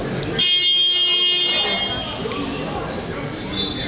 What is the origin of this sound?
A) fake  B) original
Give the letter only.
B